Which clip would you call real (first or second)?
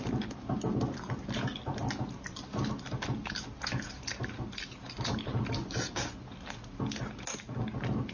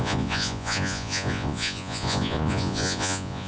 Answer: first